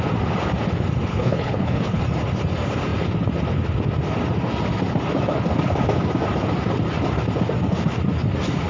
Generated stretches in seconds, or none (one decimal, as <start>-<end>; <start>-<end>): 1.1-2.0